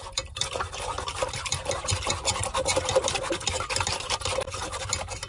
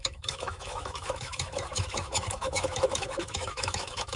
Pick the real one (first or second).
first